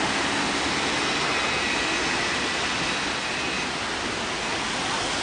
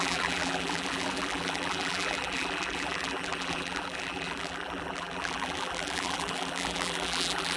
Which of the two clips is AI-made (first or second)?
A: second